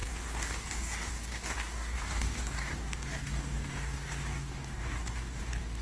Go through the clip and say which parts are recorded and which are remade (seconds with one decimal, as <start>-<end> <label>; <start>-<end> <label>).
0.0-5.8 remade